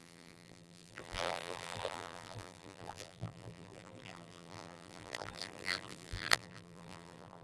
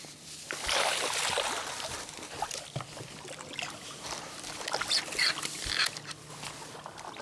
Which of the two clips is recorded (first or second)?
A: second